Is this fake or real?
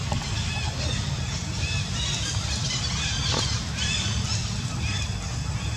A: real